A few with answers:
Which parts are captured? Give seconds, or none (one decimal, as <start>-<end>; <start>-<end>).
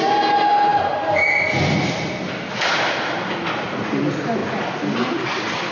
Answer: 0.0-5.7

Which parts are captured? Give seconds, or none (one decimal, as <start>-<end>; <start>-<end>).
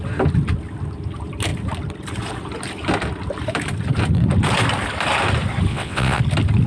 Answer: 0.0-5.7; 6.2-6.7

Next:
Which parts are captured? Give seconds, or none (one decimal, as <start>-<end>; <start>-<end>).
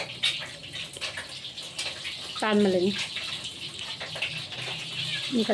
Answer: 0.0-5.5